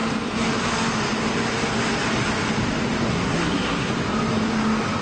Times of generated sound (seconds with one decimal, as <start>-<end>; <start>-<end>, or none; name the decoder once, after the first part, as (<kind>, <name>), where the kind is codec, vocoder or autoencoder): 3.1-3.9 (codec, SNAC)